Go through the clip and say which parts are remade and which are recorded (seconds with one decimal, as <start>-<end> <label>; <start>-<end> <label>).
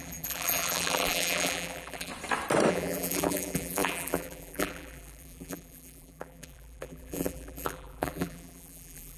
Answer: 0.0-2.1 remade; 2.1-2.7 recorded; 2.7-9.2 remade